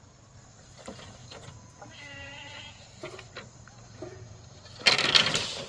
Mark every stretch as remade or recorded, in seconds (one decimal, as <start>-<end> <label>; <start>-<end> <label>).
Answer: 0.0-1.2 recorded; 1.2-3.2 remade; 3.2-3.7 recorded; 3.7-4.4 remade; 4.4-5.7 recorded